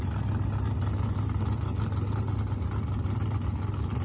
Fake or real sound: real